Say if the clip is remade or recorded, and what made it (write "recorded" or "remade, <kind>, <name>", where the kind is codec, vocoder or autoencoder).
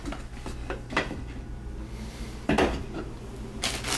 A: recorded